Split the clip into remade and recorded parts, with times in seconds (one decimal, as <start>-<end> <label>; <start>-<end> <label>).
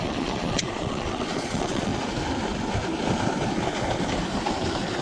0.0-1.9 remade; 1.9-5.0 recorded